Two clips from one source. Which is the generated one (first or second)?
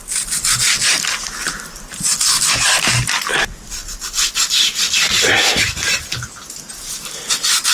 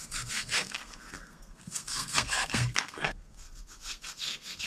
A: second